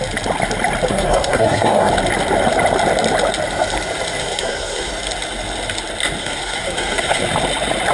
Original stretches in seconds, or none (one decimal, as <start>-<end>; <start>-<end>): 0.0-0.9; 1.9-4.2; 4.9-6.2; 7.2-7.9